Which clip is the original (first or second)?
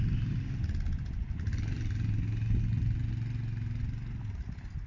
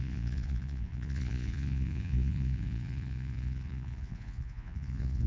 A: first